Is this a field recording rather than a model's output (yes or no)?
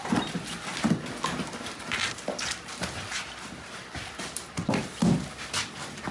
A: yes